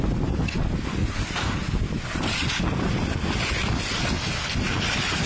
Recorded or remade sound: recorded